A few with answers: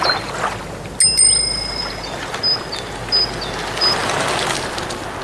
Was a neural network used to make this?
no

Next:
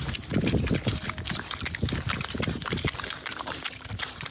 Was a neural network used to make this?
yes